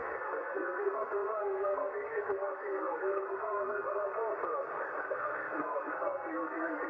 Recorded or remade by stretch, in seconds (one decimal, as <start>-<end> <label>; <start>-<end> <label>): 0.0-4.2 remade; 4.2-5.0 recorded; 5.0-6.9 remade